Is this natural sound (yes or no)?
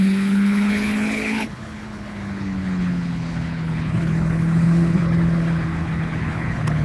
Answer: no